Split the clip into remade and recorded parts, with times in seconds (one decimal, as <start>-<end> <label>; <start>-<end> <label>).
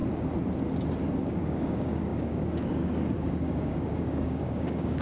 0.0-1.2 recorded; 1.2-5.0 remade